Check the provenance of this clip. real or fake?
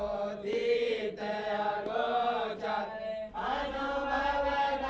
fake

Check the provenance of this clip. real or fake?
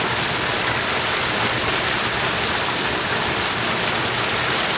real